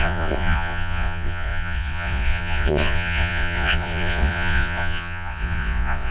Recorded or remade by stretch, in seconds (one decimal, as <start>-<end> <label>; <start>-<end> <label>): 0.0-6.1 remade